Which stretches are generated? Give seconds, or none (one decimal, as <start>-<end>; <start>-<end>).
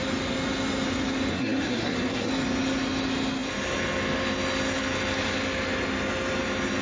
1.3-2.3